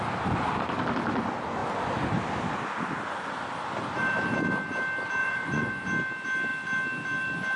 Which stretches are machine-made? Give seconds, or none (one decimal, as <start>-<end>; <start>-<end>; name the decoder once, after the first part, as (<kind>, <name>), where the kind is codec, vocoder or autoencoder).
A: 5.2-5.7 (vocoder, Vocos)